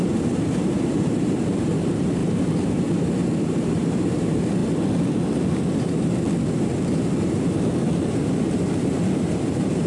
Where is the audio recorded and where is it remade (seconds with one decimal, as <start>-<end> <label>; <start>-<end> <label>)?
0.0-2.2 remade; 2.2-3.4 recorded; 3.4-4.6 remade; 4.6-9.1 recorded; 9.1-9.9 remade